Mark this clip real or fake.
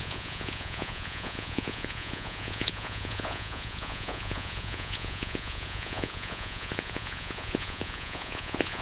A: fake